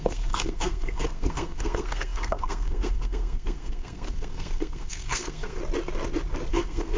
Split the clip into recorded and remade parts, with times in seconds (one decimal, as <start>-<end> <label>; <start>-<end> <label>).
0.0-5.6 remade; 5.6-6.5 recorded; 6.5-7.0 remade

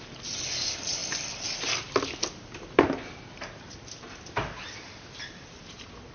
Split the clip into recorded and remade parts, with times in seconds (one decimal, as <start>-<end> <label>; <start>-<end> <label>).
0.0-6.1 recorded

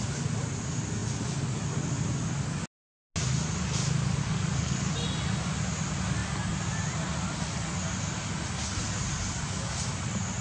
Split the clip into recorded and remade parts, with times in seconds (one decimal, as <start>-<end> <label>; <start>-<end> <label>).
0.0-4.2 recorded; 4.2-4.9 remade; 4.9-10.4 recorded

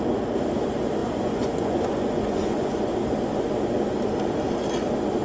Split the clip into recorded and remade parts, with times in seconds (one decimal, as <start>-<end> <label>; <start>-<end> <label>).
0.0-1.0 recorded; 1.0-2.8 remade; 2.8-5.2 recorded

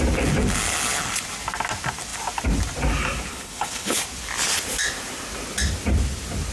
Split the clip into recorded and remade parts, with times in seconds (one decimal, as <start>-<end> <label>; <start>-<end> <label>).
0.0-3.3 recorded; 3.3-4.0 remade; 4.0-6.5 recorded

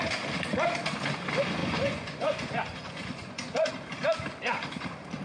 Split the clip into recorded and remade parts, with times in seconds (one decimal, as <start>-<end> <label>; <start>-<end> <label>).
0.0-1.6 recorded; 1.6-3.7 remade; 3.7-5.2 recorded

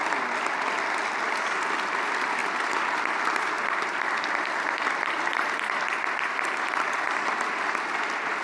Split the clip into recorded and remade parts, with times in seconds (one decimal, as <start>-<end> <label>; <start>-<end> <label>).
0.0-2.4 recorded; 2.4-7.2 remade; 7.2-8.4 recorded

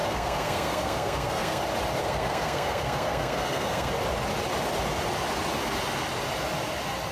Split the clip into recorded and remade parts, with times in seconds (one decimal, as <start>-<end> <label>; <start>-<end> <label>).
0.0-1.6 remade; 1.6-2.0 recorded; 2.0-3.9 remade; 3.9-7.1 recorded